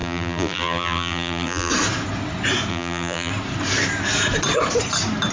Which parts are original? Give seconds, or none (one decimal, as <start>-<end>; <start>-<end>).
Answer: 1.7-2.7; 3.3-5.3